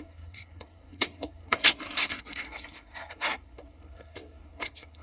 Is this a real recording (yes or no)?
no